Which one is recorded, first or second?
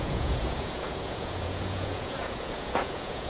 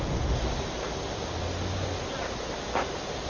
second